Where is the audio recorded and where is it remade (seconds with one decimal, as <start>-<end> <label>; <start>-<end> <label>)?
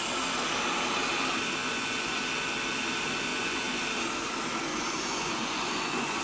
0.0-1.6 recorded; 1.6-2.2 remade; 2.2-3.3 recorded; 3.3-3.8 remade; 3.8-4.7 recorded; 4.7-6.2 remade